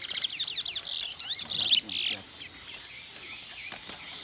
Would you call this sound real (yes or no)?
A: yes